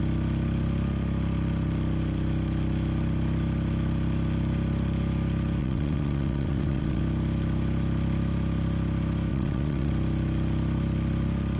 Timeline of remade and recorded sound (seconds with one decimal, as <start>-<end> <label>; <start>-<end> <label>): 0.0-5.6 recorded; 5.6-7.0 remade; 7.0-9.3 recorded; 9.3-9.9 remade; 9.9-11.6 recorded